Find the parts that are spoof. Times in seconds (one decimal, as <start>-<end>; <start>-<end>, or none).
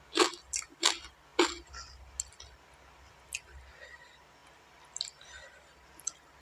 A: none